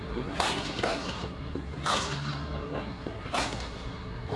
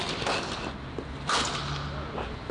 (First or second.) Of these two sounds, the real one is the second